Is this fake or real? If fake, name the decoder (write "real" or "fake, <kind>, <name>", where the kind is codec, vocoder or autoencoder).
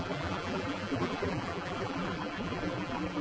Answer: fake, vocoder, BigVGAN v2